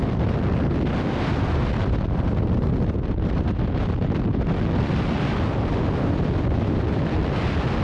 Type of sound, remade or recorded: recorded